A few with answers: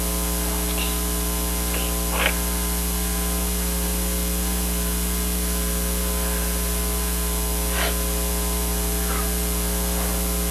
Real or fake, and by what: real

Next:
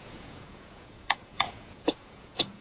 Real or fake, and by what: fake, vocoder, Vocos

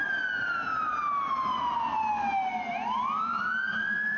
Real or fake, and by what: real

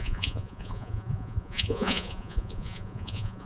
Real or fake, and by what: fake, vocoder, Vocos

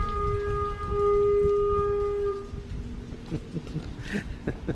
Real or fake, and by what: real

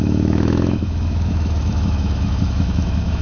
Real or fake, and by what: fake, autoencoder, DAC-VAE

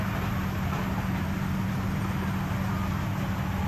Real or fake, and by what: real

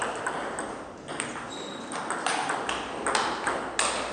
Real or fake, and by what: real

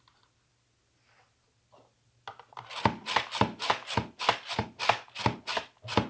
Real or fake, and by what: real